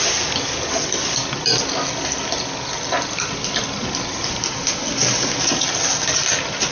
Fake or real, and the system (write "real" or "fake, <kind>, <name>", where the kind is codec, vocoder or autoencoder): real